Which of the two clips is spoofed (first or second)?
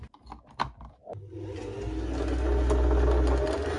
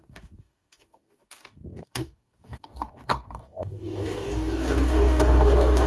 second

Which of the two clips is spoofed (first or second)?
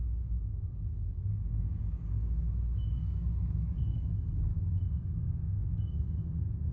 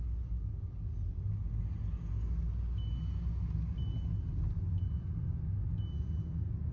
first